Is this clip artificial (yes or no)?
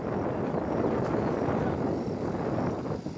no